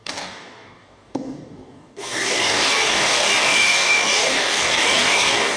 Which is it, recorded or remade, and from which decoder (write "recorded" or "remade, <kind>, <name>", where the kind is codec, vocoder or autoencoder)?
remade, codec, DAC